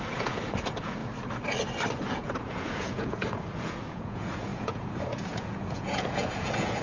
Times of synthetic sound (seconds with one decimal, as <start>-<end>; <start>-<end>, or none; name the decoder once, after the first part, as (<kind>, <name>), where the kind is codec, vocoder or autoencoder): 0.0-1.0 (vocoder, Vocos); 2.1-6.8